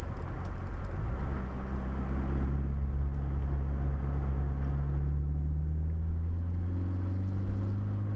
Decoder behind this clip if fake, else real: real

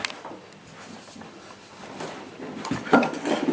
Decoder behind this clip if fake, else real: fake, vocoder, BigVGAN v2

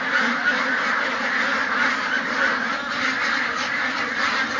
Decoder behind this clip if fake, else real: real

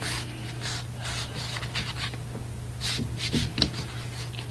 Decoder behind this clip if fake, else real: real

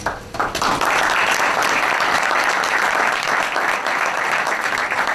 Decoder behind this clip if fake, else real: real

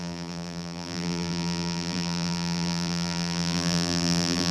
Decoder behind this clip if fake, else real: fake, vocoder, BigVGAN v2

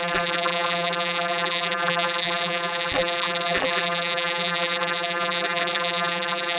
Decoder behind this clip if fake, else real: fake, vocoder, BigVGAN v2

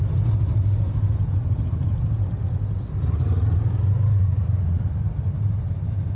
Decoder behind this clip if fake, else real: real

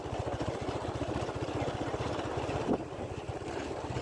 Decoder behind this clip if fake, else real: fake, vocoder, BigVGAN v2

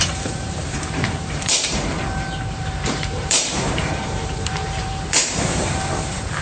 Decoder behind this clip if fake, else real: fake, vocoder, BigVGAN v2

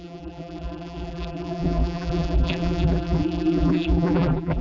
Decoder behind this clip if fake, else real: fake, vocoder, BigVGAN v2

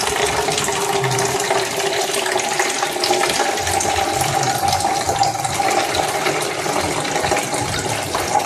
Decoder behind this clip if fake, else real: real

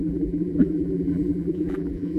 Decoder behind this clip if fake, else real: fake, vocoder, BigVGAN v2